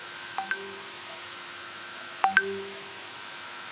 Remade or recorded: remade